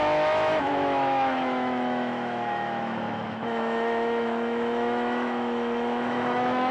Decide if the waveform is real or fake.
fake